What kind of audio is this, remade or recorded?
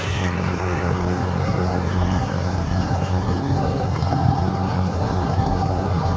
remade